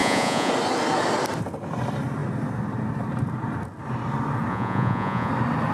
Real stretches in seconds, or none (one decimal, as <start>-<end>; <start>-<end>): 0.5-4.5; 5.3-5.7